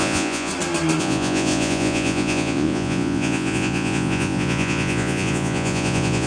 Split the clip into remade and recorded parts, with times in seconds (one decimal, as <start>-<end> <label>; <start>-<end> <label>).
0.0-0.5 remade; 0.5-1.0 recorded; 1.0-6.3 remade